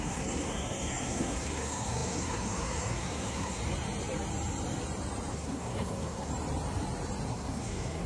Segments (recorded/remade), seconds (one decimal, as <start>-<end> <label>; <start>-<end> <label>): 0.0-3.6 remade; 3.6-5.3 recorded; 5.3-6.3 remade; 6.3-7.3 recorded; 7.3-8.1 remade